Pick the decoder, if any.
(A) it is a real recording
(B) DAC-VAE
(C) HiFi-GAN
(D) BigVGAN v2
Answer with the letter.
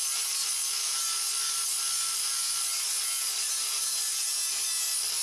A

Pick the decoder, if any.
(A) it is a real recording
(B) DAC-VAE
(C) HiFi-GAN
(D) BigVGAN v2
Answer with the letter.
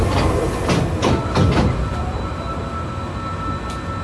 A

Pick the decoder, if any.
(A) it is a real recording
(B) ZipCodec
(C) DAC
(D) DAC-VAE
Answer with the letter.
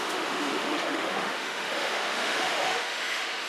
D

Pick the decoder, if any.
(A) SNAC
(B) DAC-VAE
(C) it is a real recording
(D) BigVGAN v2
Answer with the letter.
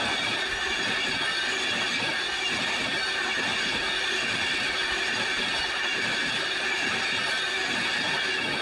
C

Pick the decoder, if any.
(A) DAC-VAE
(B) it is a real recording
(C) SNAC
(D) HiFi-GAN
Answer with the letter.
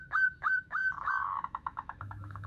A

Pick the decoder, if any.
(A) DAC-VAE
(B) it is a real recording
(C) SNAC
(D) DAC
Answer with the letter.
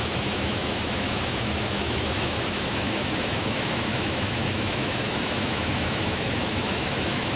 A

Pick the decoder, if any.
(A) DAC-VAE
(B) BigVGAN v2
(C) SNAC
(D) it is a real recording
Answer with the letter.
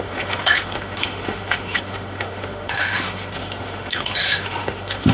A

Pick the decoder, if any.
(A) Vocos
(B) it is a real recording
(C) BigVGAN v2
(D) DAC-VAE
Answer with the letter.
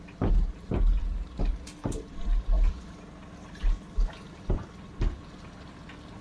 B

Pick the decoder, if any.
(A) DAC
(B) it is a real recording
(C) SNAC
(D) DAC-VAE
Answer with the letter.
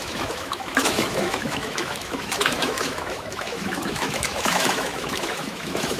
D